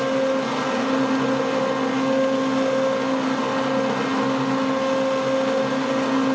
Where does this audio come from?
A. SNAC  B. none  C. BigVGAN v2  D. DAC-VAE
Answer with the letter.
B